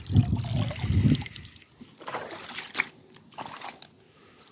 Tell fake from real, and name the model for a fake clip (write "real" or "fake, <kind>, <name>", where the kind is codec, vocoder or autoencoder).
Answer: real